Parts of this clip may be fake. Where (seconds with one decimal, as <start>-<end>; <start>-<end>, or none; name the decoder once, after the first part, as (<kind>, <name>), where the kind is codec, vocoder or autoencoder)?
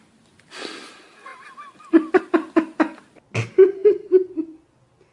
1.3-2.2 (vocoder, BigVGAN v2); 3.8-4.4